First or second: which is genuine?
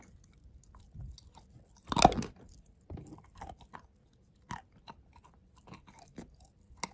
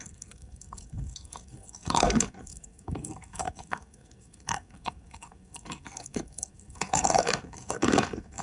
first